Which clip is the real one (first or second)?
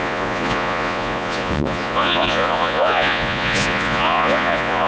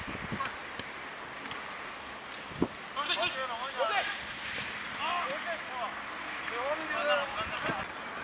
second